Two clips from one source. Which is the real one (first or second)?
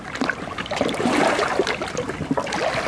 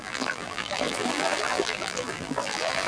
first